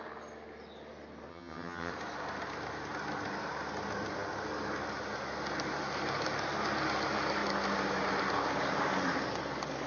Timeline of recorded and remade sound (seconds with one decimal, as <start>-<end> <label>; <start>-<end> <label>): 0.0-1.3 recorded; 1.3-1.9 remade; 1.9-9.9 recorded